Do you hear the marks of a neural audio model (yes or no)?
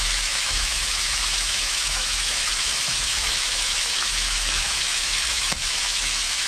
yes